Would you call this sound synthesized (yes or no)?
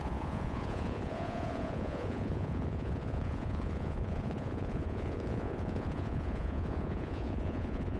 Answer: yes